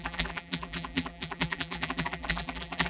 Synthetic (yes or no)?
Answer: yes